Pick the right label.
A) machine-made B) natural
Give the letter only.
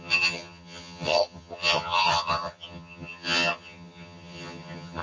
A